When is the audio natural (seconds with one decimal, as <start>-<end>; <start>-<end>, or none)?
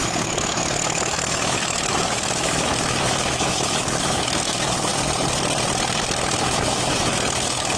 4.9-6.0